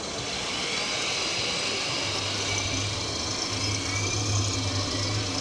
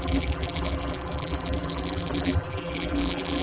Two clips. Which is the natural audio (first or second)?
first